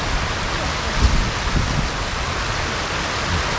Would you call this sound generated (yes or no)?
no